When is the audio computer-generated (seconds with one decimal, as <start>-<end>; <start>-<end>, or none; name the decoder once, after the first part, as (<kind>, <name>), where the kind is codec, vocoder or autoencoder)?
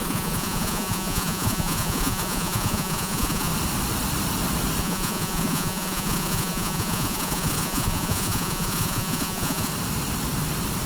0.0-3.5 (vocoder, Vocos); 4.8-9.7